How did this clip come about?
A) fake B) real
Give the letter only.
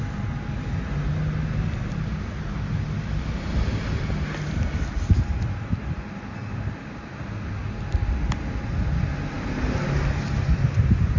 B